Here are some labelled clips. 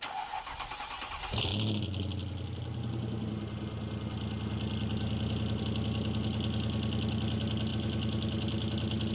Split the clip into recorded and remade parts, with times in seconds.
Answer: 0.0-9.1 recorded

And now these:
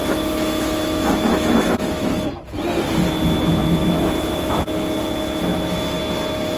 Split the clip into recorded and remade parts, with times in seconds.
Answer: 0.0-2.2 remade; 2.2-3.8 recorded; 3.8-4.5 remade; 4.5-5.5 recorded; 5.5-6.0 remade; 6.0-6.6 recorded

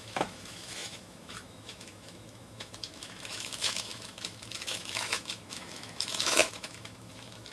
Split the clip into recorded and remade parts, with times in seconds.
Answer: 0.0-7.5 remade

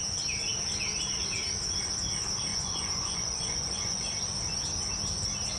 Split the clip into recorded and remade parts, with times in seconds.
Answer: 0.0-2.5 recorded; 2.5-4.0 remade; 4.0-5.6 recorded

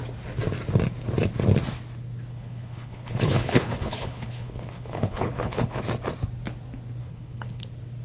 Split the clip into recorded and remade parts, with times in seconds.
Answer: 0.0-2.3 recorded; 2.3-5.8 remade; 5.8-7.0 recorded; 7.0-7.6 remade; 7.6-8.0 recorded

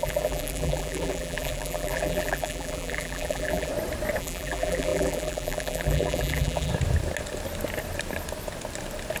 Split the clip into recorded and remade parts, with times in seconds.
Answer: 0.0-3.7 remade; 3.7-4.2 recorded; 4.2-6.7 remade; 6.7-9.2 recorded

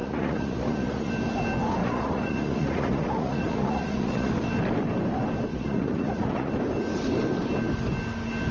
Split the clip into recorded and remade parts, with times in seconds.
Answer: 0.0-1.1 remade; 1.1-1.8 recorded; 1.8-4.3 remade; 4.3-5.5 recorded; 5.5-6.5 remade; 6.5-8.5 recorded